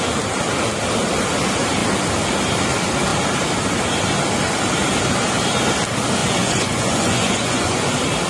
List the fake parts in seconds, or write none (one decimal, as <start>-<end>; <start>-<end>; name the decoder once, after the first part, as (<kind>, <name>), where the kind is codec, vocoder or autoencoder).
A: 6.2-7.9 (vocoder, Vocos)